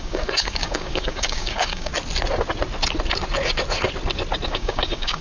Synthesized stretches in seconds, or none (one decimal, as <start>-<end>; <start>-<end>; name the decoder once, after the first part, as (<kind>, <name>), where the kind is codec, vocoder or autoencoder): 0.0-1.9 (codec, DAC); 4.5-5.2